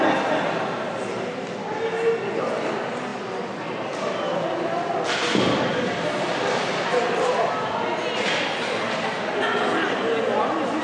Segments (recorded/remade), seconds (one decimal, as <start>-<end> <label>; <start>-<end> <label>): 0.0-10.8 recorded